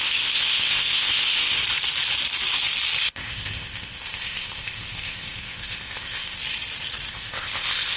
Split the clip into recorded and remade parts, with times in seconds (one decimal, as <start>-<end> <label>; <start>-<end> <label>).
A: 0.0-1.6 remade; 1.6-3.0 recorded; 3.0-6.4 remade; 6.4-7.1 recorded; 7.1-8.0 remade